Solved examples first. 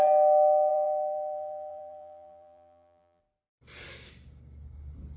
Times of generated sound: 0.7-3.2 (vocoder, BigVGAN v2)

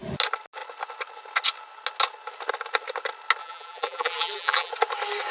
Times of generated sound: 3.4-4.7 (vocoder, BigVGAN v2)

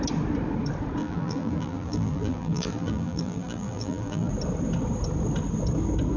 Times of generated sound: 1.0-4.3 (vocoder, BigVGAN v2)

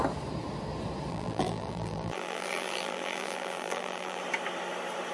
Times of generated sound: 1.1-4.2 (vocoder, BigVGAN v2)

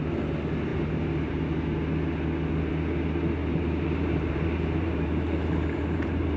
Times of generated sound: 3.4-6.4 (vocoder, BigVGAN v2)

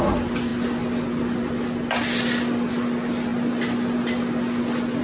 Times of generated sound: none

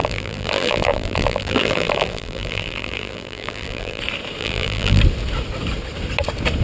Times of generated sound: 0.0-4.0 (vocoder, BigVGAN v2); 4.4-5.0

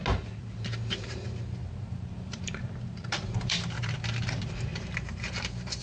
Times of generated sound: 0.4-3.9 (vocoder, BigVGAN v2); 4.7-5.8